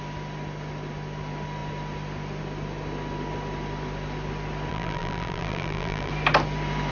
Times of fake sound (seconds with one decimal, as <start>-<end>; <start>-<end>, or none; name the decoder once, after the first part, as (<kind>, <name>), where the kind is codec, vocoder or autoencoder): 4.7-6.1 (vocoder, BigVGAN v2)